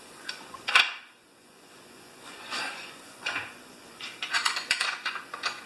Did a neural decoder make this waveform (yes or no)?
yes